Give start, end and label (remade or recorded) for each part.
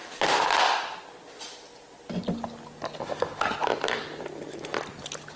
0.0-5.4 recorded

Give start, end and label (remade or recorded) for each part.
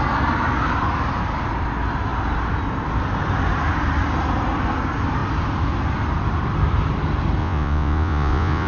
0.0-7.4 recorded; 7.4-8.7 remade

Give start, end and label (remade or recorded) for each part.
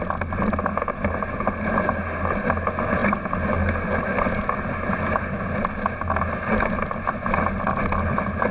0.0-8.5 recorded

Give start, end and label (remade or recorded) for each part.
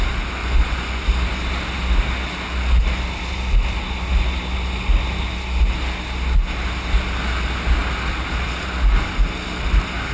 0.0-0.4 recorded; 0.4-1.0 remade; 1.0-10.1 recorded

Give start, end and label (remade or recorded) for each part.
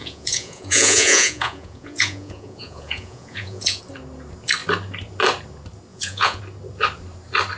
0.0-3.8 remade; 3.8-5.9 recorded; 5.9-6.4 remade; 6.4-7.6 recorded